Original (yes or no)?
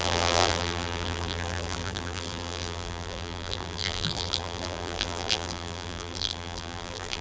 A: no